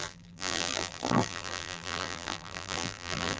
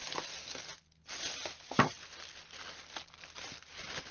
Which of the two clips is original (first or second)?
second